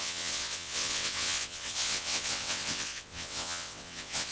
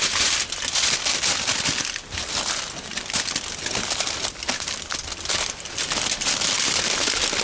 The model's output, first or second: first